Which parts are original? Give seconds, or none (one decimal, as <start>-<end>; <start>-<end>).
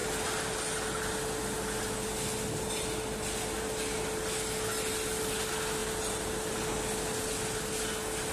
0.0-8.3